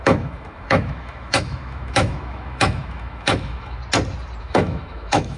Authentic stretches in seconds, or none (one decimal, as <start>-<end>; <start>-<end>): 3.8-4.4